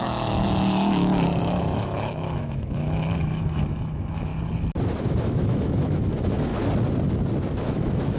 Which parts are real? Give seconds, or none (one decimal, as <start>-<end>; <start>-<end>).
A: 4.3-5.1; 6.5-7.6

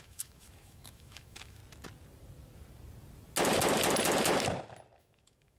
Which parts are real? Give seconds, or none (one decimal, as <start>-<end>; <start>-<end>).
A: 1.6-5.0

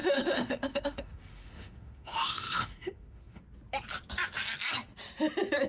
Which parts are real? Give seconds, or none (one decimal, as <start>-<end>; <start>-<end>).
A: 3.4-5.7

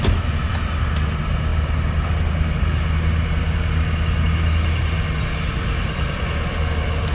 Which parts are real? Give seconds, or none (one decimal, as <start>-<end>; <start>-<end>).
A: 0.0-7.1

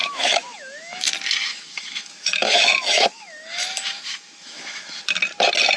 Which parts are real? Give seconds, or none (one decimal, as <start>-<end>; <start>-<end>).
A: 1.1-1.5; 5.0-5.8